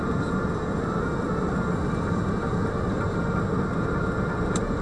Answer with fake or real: real